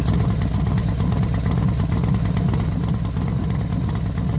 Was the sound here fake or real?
real